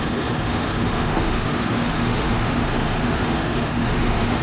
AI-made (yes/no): yes